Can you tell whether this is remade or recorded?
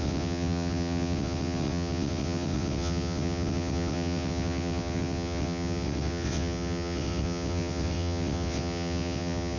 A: remade